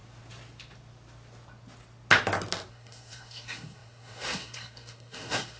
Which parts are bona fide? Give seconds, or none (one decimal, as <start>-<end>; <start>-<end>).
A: 0.0-2.7